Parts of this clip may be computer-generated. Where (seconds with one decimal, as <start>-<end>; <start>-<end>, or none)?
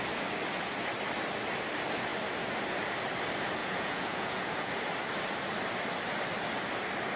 3.6-4.7